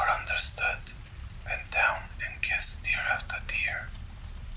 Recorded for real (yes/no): yes